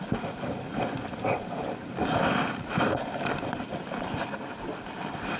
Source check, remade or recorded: recorded